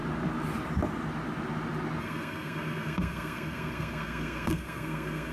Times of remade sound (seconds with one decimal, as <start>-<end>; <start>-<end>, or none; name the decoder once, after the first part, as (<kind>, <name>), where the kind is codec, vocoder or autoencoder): 2.0-5.3 (codec, SNAC)